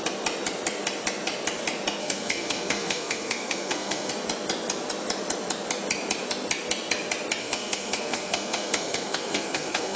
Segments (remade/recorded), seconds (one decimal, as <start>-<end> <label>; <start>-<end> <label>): 0.0-2.0 recorded; 2.0-4.1 remade; 4.1-7.4 recorded; 7.4-10.0 remade